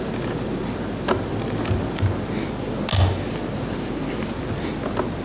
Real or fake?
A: real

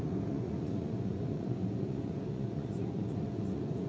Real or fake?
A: fake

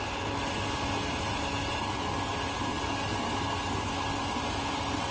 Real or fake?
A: real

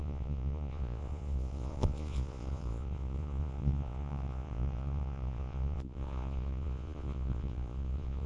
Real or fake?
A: fake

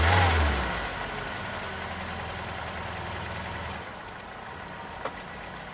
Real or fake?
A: real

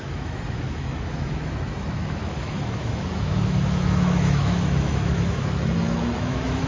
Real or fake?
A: fake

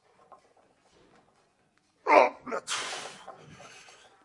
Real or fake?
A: fake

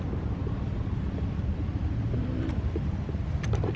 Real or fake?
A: fake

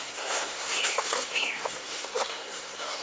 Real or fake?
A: fake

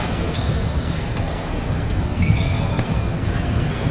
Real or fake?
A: fake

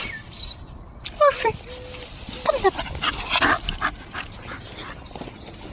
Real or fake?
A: real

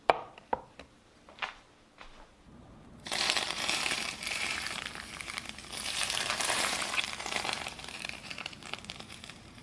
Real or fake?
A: fake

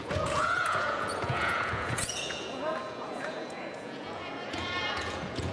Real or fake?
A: fake